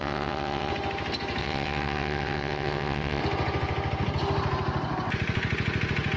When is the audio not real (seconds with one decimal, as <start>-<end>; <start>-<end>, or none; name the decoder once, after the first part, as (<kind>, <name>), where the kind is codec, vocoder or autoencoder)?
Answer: 0.0-0.7 (vocoder, WaveNeXt); 1.4-3.2